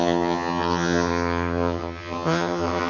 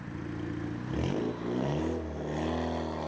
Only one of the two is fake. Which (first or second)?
first